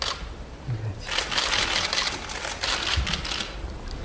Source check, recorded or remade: recorded